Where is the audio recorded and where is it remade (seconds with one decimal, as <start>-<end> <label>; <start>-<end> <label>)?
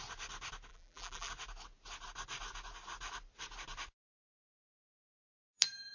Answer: 0.0-0.7 recorded; 0.7-1.3 remade; 1.3-5.9 recorded